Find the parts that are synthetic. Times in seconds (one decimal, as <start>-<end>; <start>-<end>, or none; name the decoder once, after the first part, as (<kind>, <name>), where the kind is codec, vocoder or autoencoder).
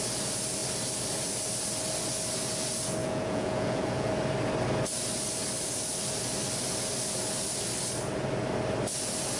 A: 3.0-4.1 (vocoder, Vocos)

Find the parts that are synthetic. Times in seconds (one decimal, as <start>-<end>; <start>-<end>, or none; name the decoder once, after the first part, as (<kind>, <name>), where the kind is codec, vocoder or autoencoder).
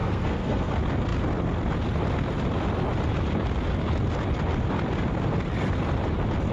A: 0.0-0.7 (codec, SNAC)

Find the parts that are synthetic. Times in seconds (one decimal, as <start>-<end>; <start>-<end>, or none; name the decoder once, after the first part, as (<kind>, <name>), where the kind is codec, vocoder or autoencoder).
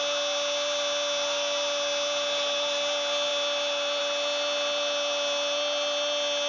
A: none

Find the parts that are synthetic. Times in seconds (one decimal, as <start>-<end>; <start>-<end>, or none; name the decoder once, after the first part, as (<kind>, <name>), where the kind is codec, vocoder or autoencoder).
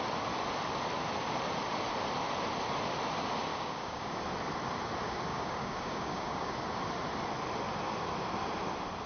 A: 3.5-4.2 (codec, DAC); 5.3-6.5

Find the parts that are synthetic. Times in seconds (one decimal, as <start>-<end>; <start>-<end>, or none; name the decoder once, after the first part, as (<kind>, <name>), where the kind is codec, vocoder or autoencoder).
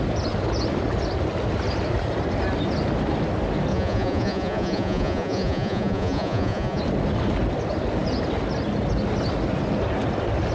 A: 3.7-6.8 (vocoder, Vocos)